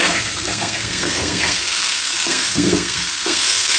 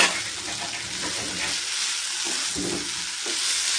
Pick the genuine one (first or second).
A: second